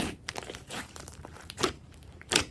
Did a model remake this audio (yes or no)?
yes